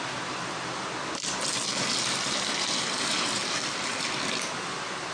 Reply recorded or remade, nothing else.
remade